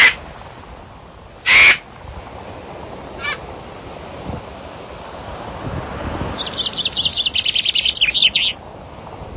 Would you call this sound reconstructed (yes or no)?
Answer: no